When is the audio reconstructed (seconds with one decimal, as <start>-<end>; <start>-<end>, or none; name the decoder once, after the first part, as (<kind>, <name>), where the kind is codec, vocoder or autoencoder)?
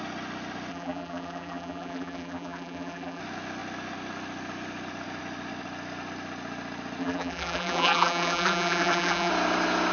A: 0.7-3.2 (vocoder, BigVGAN v2); 7.0-9.3